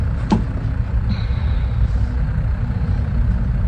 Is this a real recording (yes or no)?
yes